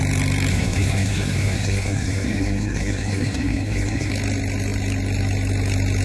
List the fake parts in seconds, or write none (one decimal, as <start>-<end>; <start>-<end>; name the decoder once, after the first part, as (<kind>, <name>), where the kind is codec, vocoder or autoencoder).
0.5-4.1 (codec, SNAC)